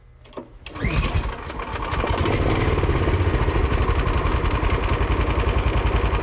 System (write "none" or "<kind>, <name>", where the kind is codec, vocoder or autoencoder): none